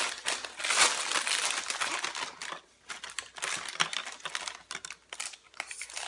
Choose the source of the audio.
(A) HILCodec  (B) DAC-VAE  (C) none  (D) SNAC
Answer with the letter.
C